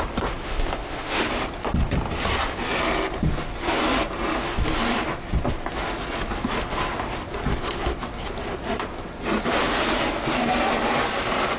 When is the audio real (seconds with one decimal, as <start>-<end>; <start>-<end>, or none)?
0.0-0.4; 1.3-11.6

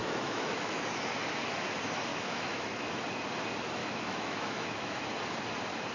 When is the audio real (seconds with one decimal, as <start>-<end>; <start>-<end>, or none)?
0.8-2.1; 3.0-3.8; 5.0-5.9